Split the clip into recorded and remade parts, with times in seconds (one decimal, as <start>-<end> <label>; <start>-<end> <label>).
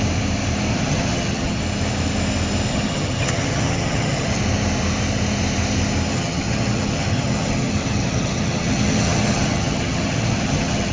0.0-0.7 recorded; 0.7-1.6 remade; 1.6-2.7 recorded; 2.7-4.4 remade; 4.4-6.1 recorded; 6.1-10.9 remade